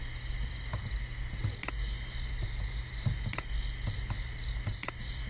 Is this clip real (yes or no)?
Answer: yes